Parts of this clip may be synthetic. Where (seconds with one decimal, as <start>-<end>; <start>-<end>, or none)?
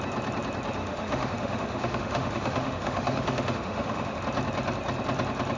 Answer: 0.8-4.2